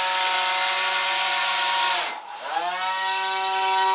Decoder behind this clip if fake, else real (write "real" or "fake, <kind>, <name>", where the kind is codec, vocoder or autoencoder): real